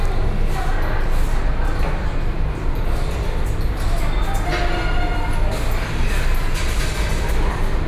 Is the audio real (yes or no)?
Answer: yes